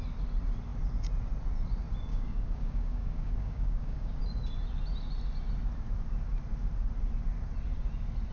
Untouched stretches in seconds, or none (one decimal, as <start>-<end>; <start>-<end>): 0.0-2.1; 4.2-8.3